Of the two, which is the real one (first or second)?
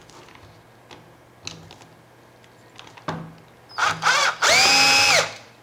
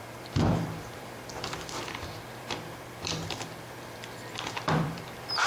first